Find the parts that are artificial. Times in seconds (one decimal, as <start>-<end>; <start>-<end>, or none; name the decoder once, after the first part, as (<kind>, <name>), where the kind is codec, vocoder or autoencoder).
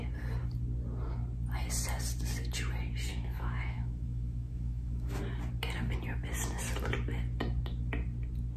3.1-5.2 (autoencoder, DAC-VAE)